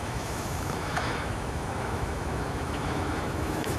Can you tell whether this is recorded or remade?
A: remade